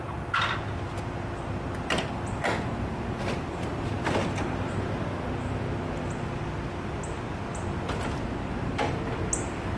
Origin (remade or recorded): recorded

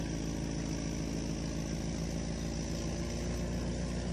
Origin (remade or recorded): recorded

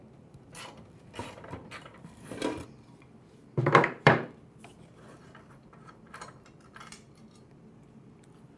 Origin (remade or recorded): remade